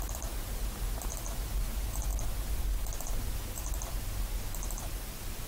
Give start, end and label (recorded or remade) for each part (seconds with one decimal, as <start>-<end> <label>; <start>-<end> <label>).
0.0-5.5 recorded